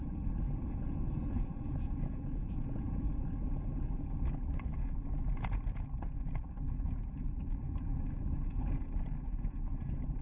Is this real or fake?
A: fake